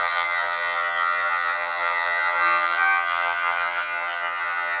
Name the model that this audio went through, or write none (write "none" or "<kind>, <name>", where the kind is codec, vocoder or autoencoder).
vocoder, HiFi-GAN